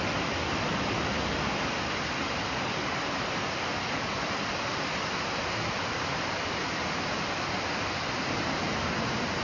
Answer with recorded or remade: recorded